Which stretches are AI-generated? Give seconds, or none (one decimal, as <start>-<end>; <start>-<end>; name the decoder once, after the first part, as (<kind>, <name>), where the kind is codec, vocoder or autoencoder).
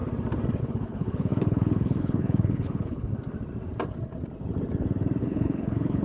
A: 0.6-3.1 (codec, HILCodec); 5.2-6.0